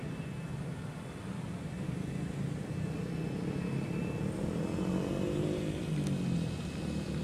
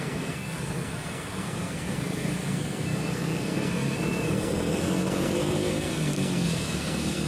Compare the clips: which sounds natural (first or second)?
first